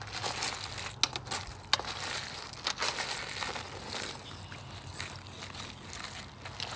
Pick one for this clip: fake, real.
real